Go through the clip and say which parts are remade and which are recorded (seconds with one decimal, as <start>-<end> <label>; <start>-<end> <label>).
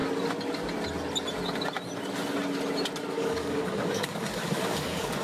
0.0-3.1 recorded; 3.1-5.2 remade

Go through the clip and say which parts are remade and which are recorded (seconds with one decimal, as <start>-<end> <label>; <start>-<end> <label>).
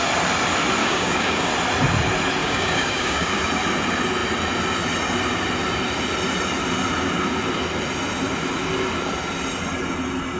0.0-0.8 recorded; 0.8-1.5 remade; 1.5-2.4 recorded; 2.4-3.4 remade; 3.4-10.4 recorded